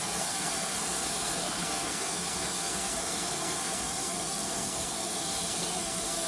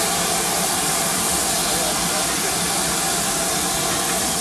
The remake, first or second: first